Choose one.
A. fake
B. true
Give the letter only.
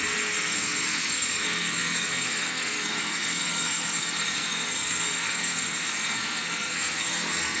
A